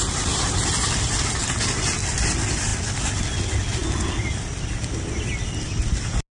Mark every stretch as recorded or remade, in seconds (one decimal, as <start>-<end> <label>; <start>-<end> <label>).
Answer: 0.0-6.3 recorded